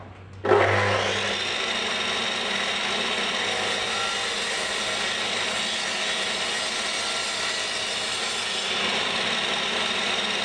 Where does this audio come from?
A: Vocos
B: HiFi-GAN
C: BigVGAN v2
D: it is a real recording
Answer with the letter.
D